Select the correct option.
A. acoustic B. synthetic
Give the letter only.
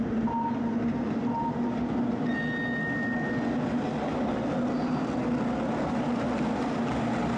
A